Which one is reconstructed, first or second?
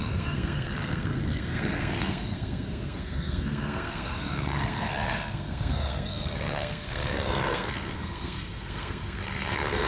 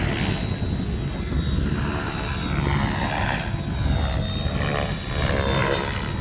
first